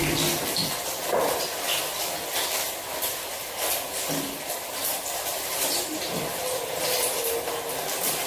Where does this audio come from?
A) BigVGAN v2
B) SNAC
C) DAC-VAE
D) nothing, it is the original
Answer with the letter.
D